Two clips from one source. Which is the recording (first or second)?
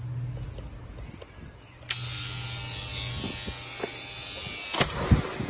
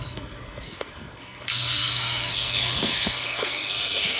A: first